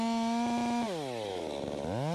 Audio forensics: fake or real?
real